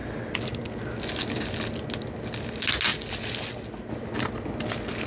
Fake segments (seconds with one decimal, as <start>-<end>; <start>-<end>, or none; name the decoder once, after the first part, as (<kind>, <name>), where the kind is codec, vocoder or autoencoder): none